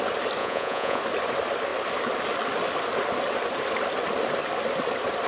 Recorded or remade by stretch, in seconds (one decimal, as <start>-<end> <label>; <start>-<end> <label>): 0.0-0.4 recorded; 0.4-1.0 remade; 1.0-5.3 recorded

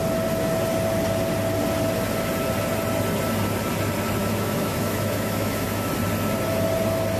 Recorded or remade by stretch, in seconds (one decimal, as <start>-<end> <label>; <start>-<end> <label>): 0.0-4.2 recorded; 4.2-5.9 remade; 5.9-7.2 recorded

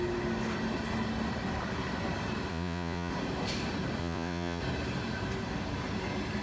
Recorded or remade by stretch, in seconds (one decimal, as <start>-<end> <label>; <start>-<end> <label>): 0.0-2.5 recorded; 2.5-3.1 remade; 3.1-4.0 recorded; 4.0-4.6 remade; 4.6-6.4 recorded

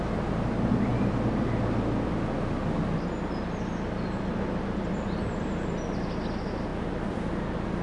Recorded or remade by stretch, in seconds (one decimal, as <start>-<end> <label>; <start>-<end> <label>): 0.0-6.7 recorded; 6.7-7.2 remade; 7.2-7.8 recorded

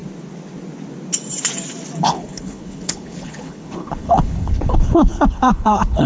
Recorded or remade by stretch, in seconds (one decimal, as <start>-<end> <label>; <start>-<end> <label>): 0.0-2.0 recorded; 2.0-6.1 remade

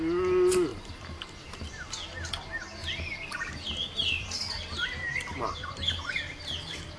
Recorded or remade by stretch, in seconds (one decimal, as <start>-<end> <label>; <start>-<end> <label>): 0.0-0.7 recorded; 0.7-1.7 remade; 1.7-2.8 recorded; 2.8-3.5 remade; 3.5-7.0 recorded